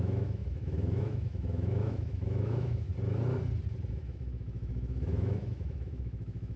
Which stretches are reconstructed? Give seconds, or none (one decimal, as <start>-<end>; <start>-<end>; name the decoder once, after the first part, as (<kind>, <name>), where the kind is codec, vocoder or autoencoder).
0.0-2.9 (autoencoder, DAC-VAE); 3.9-6.6